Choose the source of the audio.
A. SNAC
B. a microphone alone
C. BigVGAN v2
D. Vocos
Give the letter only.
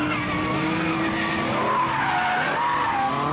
B